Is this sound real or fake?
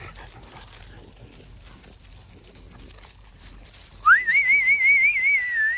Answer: real